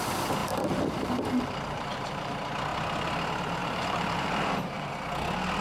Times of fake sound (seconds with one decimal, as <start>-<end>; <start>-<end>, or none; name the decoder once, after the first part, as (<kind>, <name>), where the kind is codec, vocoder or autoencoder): 0.4-2.3 (vocoder, BigVGAN v2); 3.6-4.9